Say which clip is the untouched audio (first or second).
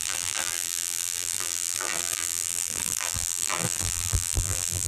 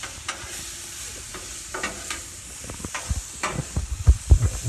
second